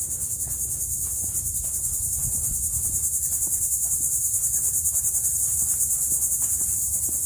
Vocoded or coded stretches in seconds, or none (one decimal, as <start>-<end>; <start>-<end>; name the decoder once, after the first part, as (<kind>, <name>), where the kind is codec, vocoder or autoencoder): none

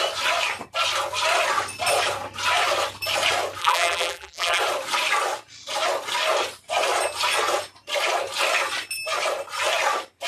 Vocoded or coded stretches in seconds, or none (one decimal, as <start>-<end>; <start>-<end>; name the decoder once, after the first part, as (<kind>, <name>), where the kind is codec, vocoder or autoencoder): 3.6-4.6 (vocoder, BigVGAN v2)

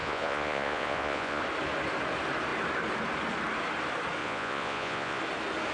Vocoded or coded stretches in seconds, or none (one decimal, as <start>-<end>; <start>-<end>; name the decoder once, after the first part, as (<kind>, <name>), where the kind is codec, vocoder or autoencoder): 0.0-1.4 (vocoder, Vocos); 4.2-5.2

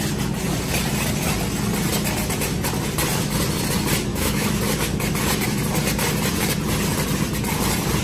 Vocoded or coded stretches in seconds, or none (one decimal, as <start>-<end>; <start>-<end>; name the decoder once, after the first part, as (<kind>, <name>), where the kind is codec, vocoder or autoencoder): 4.1-4.6 (autoencoder, DAC-VAE)

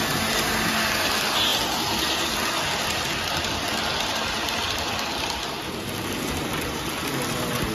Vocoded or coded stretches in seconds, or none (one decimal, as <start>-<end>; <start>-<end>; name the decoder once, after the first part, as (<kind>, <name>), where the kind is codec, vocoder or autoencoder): none

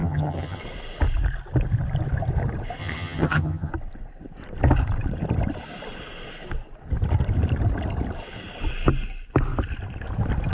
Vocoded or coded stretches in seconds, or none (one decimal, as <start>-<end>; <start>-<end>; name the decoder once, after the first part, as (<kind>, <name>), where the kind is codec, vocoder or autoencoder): 0.0-0.6 (vocoder, HiFi-GAN); 2.8-3.7

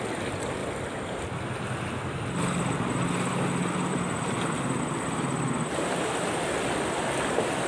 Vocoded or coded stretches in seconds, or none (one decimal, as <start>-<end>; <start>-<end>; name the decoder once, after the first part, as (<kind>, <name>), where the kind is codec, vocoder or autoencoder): none